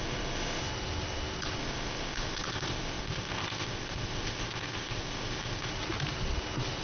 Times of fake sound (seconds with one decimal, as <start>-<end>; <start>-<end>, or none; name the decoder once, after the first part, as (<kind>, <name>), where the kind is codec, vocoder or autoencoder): 0.0-0.6 (codec, ZipCodec); 1.6-5.7

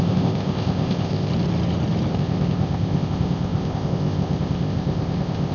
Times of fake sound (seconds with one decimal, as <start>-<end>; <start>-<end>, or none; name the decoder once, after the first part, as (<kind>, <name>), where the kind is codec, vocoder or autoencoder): 0.0-1.3 (codec, ZipCodec); 2.1-5.5

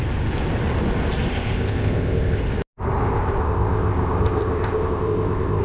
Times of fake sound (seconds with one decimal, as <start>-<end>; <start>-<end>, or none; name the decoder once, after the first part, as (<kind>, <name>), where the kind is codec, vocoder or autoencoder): 1.3-2.4 (codec, ZipCodec); 3.4-5.6

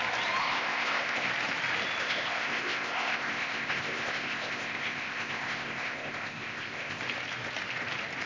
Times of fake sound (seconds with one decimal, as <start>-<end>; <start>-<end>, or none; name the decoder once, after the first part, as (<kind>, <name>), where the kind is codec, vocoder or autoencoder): 0.4-1.3 (codec, ZipCodec); 2.0-7.0